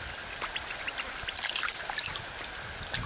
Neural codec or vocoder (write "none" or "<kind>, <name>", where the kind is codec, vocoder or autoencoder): none